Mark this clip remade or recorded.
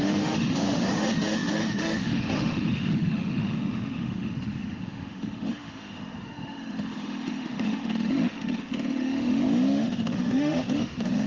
remade